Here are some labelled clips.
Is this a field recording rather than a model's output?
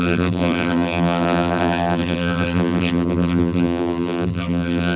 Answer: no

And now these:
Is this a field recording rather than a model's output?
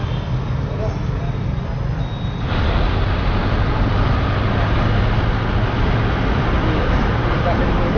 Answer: yes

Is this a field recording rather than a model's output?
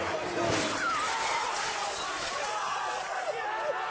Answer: yes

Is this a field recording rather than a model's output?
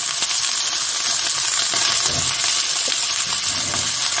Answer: yes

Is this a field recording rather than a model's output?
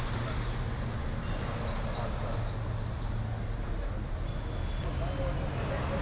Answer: yes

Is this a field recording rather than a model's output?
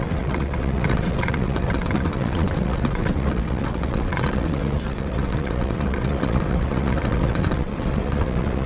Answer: no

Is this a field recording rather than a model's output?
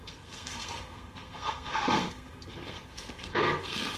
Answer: no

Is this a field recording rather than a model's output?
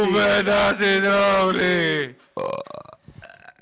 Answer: yes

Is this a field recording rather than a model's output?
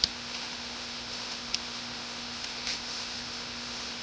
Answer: no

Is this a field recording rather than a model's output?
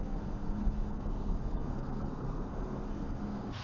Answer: no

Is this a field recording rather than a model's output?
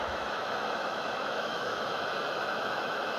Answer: no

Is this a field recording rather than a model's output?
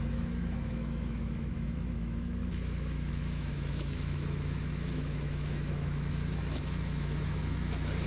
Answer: no